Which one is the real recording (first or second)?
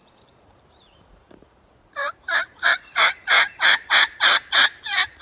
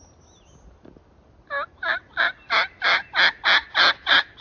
second